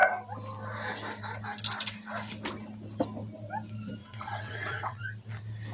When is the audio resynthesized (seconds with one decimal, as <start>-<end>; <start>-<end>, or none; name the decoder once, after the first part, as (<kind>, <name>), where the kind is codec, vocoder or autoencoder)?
4.0-5.0 (vocoder, WaveNeXt)